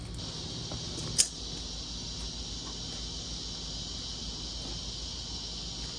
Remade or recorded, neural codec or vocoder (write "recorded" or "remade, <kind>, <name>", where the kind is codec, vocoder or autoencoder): recorded